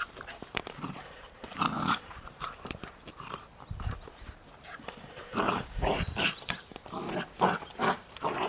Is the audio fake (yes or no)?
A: yes